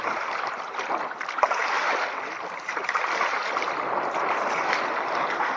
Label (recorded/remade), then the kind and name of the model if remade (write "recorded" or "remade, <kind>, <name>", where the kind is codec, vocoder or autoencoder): recorded